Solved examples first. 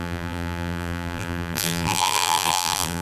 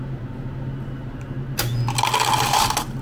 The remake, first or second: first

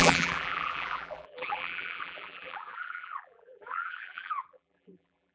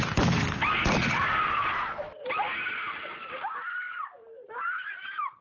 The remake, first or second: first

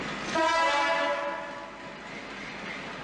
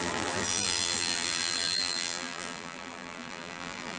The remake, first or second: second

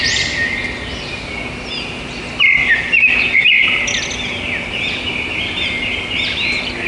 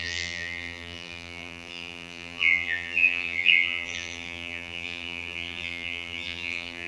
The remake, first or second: second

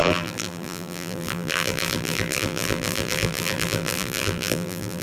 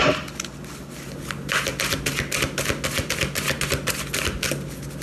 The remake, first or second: first